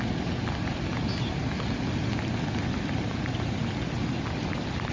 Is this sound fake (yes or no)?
no